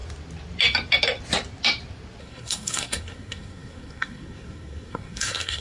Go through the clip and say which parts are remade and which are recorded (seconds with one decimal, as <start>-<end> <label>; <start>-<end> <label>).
0.0-2.2 recorded; 2.2-5.6 remade